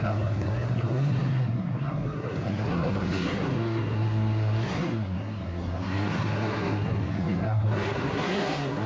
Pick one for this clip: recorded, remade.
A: remade